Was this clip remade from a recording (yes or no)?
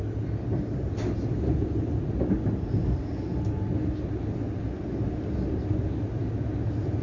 no